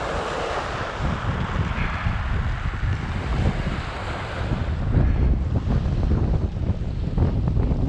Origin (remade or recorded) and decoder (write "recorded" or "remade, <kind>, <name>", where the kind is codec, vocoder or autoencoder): recorded